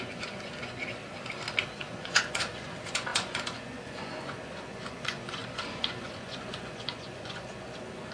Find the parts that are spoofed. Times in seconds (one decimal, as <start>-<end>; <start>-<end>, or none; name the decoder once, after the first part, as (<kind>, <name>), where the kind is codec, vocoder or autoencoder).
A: 0.0-1.0 (vocoder, Vocos); 1.9-8.1